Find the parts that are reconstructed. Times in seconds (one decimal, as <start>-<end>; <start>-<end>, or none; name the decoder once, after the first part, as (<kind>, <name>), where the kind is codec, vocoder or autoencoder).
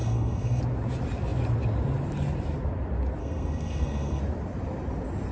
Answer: 0.0-0.6 (codec, SNAC); 3.2-4.2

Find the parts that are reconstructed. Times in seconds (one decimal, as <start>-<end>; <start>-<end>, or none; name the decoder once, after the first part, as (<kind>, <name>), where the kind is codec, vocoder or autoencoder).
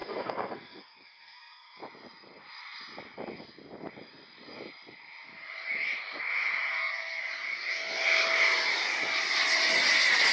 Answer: 0.0-1.8 (codec, SNAC); 6.7-7.2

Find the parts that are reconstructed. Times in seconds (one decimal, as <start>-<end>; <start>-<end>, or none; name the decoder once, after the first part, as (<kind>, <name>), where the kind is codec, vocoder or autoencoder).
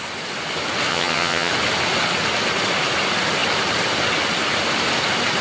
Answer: 0.9-1.5 (vocoder, HiFi-GAN)